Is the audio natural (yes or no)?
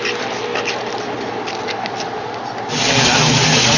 yes